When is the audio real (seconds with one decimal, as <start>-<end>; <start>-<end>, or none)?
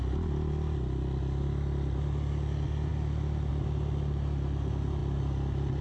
0.0-5.8